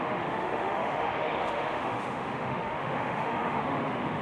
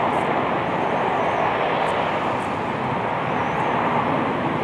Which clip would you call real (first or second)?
second